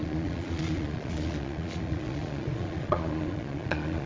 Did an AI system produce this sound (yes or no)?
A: yes